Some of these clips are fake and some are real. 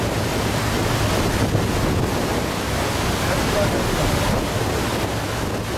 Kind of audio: real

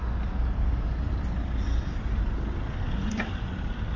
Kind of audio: real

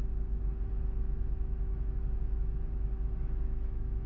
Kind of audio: fake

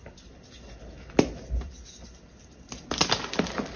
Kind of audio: real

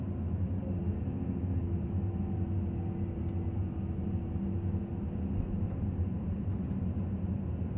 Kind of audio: real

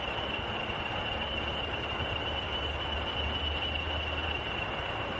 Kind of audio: real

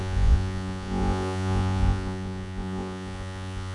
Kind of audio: fake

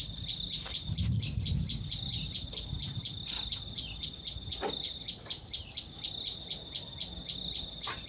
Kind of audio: real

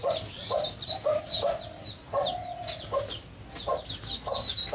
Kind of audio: real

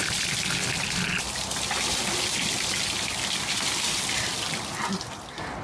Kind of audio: real